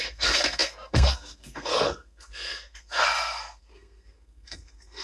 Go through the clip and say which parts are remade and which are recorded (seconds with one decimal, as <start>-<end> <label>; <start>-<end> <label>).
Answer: 0.0-5.0 remade